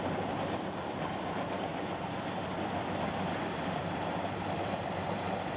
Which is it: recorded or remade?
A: remade